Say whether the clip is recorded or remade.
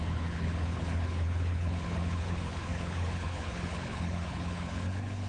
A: remade